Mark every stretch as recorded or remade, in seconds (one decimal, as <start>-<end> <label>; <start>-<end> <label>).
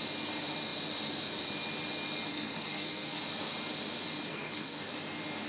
0.0-2.3 recorded; 2.3-3.2 remade; 3.2-4.3 recorded; 4.3-4.9 remade; 4.9-5.5 recorded